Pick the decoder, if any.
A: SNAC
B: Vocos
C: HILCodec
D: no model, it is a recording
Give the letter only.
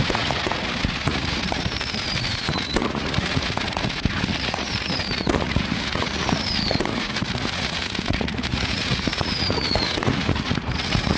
B